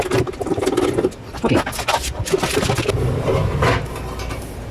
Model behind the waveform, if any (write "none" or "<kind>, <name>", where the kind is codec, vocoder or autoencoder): none